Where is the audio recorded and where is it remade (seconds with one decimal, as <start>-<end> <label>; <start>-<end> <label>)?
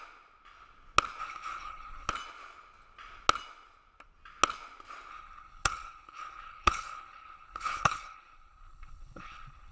0.0-1.2 recorded; 1.2-2.1 remade; 2.1-5.1 recorded; 5.1-9.7 remade